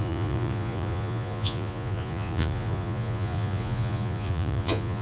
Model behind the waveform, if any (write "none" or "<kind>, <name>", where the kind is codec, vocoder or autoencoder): vocoder, Vocos